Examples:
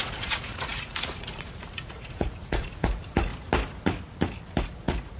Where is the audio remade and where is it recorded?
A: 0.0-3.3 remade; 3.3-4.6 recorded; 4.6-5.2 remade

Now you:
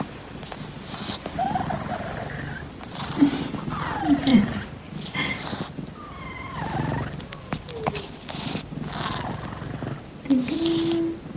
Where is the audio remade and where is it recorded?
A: 0.0-11.4 recorded

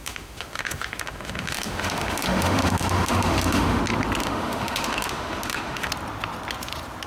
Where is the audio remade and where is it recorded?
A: 0.0-3.8 remade; 3.8-4.2 recorded; 4.2-5.9 remade; 5.9-7.1 recorded

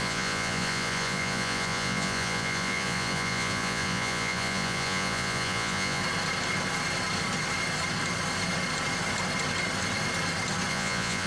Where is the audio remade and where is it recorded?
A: 0.0-6.0 remade; 6.0-10.7 recorded; 10.7-11.3 remade

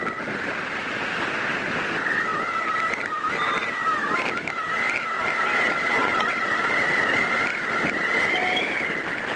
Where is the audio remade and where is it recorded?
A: 0.0-6.0 recorded; 6.0-6.6 remade; 6.6-9.4 recorded

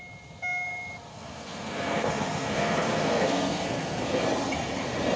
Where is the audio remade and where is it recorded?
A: 0.0-1.1 recorded; 1.1-4.2 remade; 4.2-5.2 recorded